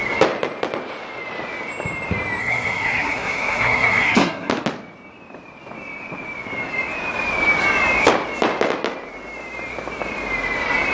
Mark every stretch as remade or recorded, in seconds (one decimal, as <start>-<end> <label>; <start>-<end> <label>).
0.0-2.4 recorded; 2.4-4.5 remade; 4.5-10.9 recorded